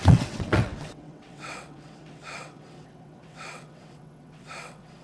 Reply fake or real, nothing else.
fake